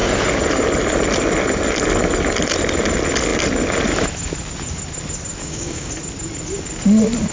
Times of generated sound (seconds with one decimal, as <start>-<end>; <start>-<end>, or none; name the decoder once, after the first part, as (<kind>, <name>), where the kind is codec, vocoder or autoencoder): 5.4-5.9 (codec, DAC)